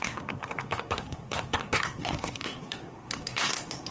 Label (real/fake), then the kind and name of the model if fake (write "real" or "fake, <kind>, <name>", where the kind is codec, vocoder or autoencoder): fake, codec, SNAC